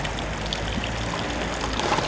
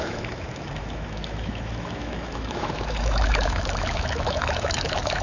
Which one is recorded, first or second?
first